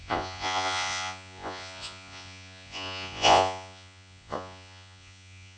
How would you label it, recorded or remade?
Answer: remade